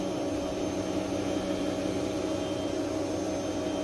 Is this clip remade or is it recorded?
recorded